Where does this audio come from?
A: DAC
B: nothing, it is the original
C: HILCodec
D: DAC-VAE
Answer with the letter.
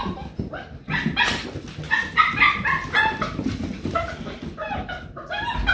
B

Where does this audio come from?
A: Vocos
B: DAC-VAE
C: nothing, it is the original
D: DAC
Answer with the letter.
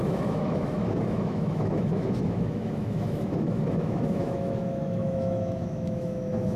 B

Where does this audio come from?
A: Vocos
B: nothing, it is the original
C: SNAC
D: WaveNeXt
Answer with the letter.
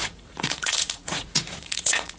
A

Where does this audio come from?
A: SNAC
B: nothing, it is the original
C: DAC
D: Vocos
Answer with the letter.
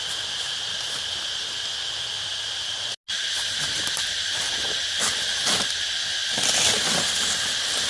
B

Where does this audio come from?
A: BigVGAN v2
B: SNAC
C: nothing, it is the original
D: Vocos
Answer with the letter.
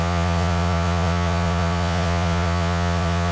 D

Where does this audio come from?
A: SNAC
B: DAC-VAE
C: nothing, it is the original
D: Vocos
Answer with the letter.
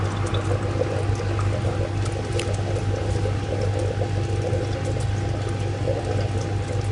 C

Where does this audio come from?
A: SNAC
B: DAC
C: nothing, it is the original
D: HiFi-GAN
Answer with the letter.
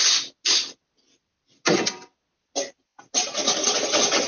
C